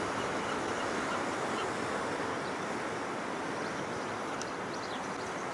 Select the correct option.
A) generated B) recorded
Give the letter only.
A